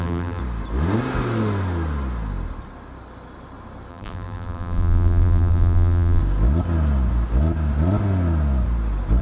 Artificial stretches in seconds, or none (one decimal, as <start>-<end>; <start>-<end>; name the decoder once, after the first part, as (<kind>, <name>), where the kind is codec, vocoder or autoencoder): 0.0-0.4 (vocoder, BigVGAN v2); 3.9-6.2